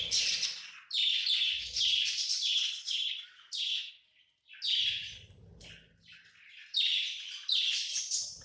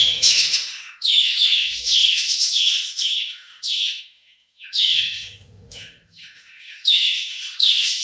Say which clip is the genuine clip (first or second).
first